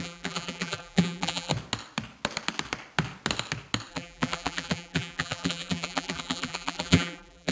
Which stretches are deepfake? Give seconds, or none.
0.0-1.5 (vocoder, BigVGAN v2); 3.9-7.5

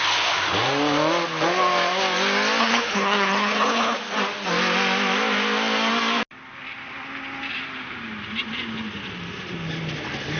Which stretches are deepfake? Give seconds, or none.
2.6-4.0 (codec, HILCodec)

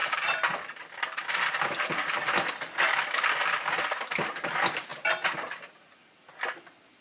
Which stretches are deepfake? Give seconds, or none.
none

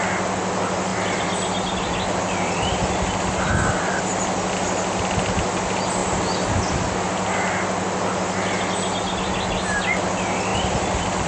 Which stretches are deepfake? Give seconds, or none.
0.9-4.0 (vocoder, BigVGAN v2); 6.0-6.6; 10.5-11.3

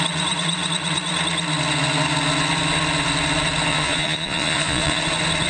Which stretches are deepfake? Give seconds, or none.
3.7-5.0 (vocoder, Vocos)

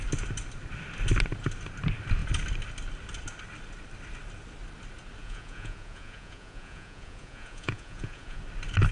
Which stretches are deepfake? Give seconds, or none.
5.2-8.4 (vocoder, Vocos)

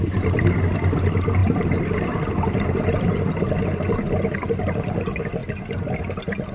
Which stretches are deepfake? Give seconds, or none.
none